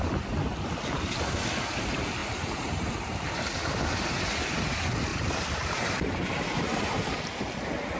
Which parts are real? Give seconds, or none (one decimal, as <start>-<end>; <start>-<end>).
0.0-5.1; 7.2-8.0

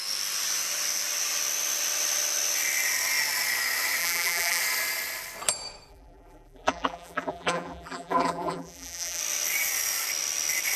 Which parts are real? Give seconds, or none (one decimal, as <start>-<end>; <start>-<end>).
0.0-4.0; 4.6-5.9; 9.2-10.8

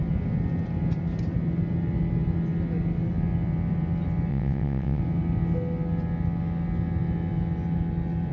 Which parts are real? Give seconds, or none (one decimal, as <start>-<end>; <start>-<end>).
0.0-4.3; 5.0-8.3

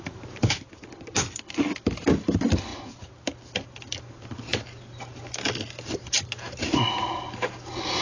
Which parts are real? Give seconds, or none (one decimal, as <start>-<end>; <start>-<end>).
0.0-8.0

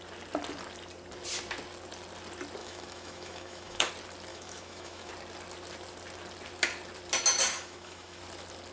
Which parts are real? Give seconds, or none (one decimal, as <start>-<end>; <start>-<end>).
0.0-2.6; 3.9-4.3; 5.1-7.5; 8.2-8.7

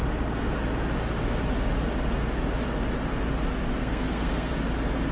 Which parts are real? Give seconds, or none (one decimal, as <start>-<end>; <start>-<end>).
0.0-3.8; 4.5-5.1

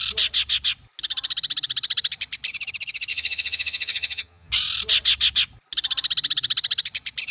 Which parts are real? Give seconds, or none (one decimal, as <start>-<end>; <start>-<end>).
0.0-3.1; 4.5-7.3